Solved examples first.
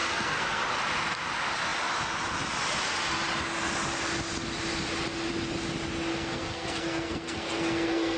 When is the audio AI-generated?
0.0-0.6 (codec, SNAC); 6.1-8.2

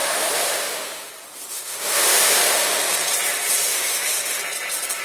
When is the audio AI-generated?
0.0-1.1 (autoencoder, DAC-VAE); 1.5-2.8; 3.7-4.4